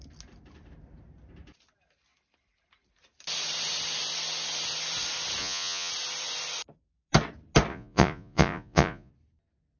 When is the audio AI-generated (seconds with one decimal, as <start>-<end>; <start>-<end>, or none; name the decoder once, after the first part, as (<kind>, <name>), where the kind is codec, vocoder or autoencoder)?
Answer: 5.4-5.9 (vocoder, Vocos); 7.7-9.1